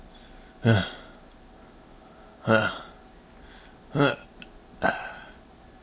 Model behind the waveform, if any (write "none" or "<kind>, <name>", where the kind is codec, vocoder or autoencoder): none